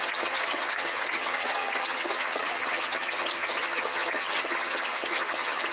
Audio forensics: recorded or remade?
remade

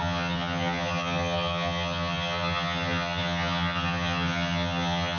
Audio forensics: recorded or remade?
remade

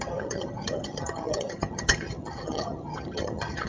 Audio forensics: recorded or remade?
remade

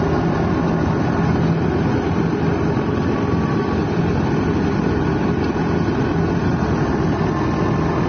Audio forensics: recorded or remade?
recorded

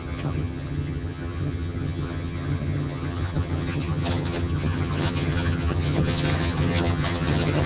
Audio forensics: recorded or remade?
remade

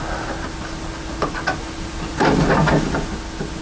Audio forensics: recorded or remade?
recorded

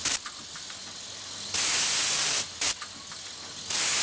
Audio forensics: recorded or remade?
recorded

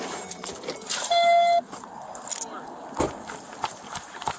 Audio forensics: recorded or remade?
recorded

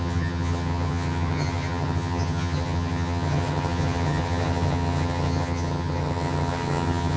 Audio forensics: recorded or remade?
remade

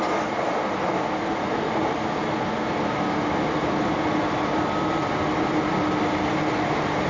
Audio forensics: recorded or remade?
recorded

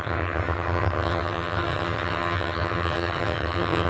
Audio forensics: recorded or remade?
remade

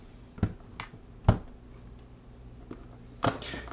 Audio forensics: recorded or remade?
recorded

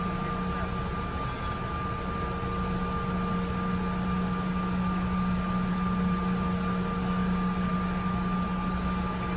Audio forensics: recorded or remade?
recorded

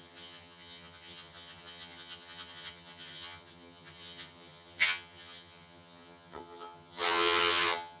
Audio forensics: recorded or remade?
remade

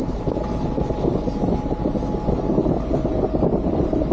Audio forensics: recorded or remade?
recorded